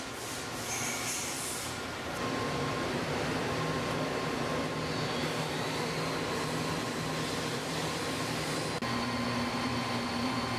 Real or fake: real